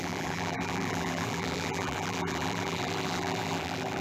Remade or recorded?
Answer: remade